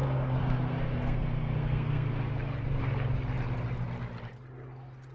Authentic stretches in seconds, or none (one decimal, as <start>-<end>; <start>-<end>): 2.2-5.1